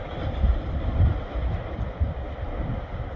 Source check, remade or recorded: recorded